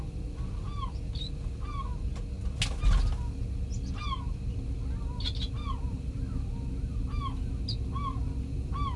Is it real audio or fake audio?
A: real